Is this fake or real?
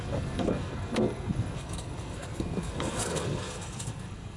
fake